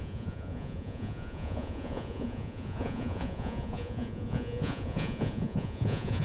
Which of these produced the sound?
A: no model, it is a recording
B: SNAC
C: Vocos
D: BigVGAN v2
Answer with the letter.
C